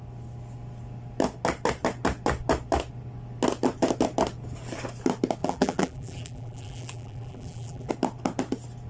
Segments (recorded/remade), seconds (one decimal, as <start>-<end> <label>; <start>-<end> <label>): 0.0-5.4 recorded; 5.4-7.9 remade; 7.9-8.9 recorded